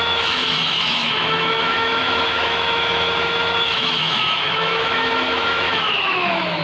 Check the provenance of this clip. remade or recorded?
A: remade